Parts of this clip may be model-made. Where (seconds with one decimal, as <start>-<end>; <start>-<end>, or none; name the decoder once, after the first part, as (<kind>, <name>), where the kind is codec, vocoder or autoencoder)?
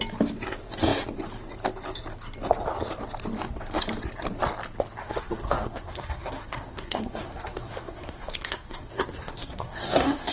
5.0-10.3 (codec, SNAC)